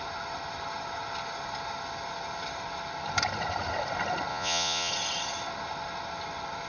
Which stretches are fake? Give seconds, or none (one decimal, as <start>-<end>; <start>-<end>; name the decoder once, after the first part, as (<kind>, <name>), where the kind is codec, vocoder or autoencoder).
4.3-4.9 (vocoder, Vocos)